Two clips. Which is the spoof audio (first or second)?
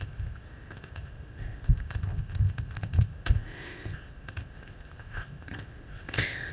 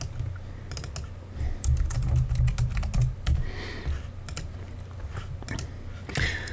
first